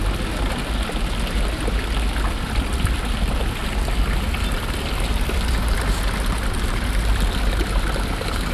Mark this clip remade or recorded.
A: recorded